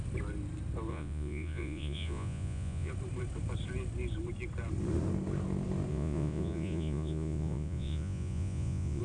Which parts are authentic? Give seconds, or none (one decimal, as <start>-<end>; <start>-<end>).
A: 0.0-0.9; 2.9-5.9